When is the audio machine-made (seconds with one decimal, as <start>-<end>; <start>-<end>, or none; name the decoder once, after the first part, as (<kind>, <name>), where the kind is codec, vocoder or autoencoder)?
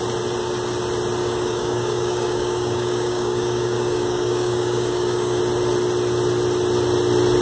1.2-5.4 (codec, DAC)